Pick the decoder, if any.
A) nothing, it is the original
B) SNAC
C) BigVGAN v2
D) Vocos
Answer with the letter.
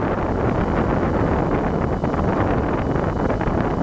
A